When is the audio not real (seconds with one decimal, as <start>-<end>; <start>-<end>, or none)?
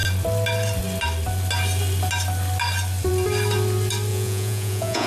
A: 4.1-5.1